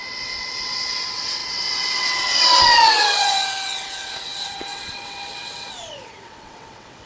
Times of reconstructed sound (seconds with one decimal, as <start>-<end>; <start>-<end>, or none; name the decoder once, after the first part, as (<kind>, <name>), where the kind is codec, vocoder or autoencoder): 0.0-7.1 (vocoder, WaveNeXt)